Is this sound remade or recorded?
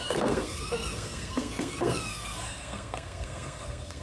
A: remade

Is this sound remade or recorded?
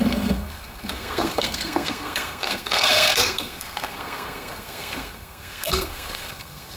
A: remade